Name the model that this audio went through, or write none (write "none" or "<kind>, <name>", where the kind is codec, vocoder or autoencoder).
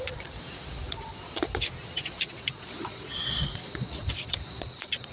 vocoder, Vocos